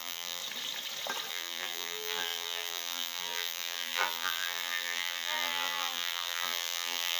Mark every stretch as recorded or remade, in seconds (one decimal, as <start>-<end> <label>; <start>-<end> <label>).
0.0-0.4 remade; 0.4-1.3 recorded; 1.3-7.2 remade